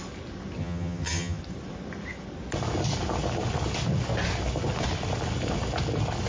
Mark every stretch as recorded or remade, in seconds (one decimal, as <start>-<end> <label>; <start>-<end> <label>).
0.0-0.6 recorded; 0.6-1.4 remade; 1.4-6.3 recorded